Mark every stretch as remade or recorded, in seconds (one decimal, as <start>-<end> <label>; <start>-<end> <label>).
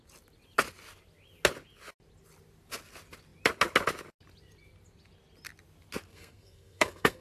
0.0-6.1 recorded; 6.1-7.2 remade